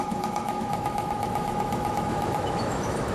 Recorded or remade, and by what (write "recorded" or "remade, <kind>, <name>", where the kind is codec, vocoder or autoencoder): remade, autoencoder, DAC-VAE